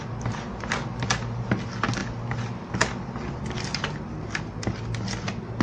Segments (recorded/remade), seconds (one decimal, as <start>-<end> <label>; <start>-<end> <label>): 0.0-5.6 recorded